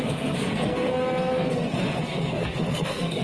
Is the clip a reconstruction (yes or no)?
yes